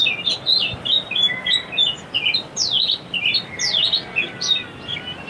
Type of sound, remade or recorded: recorded